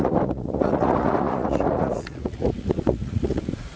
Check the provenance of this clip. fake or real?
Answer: fake